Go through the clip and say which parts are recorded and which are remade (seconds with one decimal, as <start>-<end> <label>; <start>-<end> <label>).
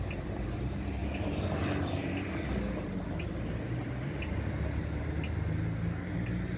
0.0-1.0 recorded; 1.0-5.0 remade; 5.0-6.6 recorded